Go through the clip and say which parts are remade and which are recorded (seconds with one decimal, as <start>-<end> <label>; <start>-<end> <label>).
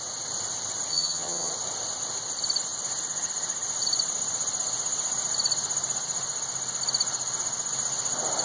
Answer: 0.0-0.9 recorded; 0.9-1.5 remade; 1.5-8.4 recorded